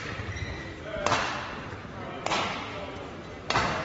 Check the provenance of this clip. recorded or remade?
recorded